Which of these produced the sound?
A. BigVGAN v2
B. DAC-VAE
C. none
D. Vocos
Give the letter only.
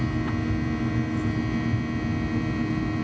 C